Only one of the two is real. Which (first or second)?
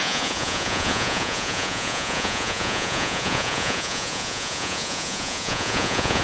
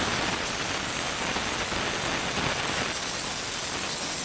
second